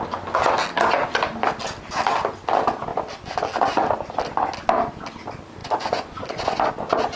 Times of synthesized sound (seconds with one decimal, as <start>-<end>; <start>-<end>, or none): 5.6-6.7